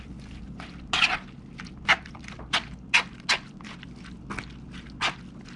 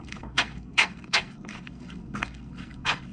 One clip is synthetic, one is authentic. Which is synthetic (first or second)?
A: second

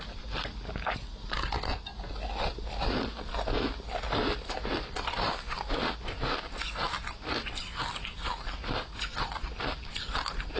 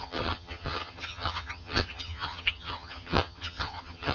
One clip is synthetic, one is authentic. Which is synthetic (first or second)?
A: second